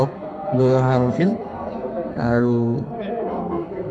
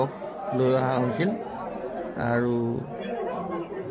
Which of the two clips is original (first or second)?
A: second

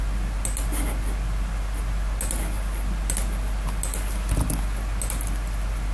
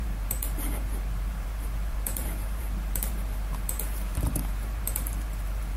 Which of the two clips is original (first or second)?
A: first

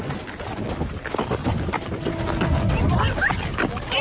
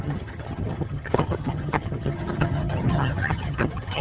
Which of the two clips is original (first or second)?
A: first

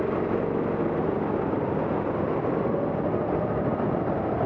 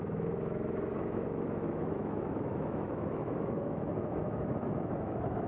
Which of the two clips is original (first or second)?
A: first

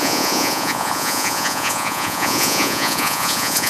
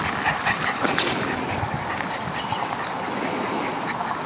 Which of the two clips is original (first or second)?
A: second